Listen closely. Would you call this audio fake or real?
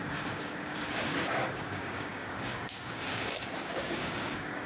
fake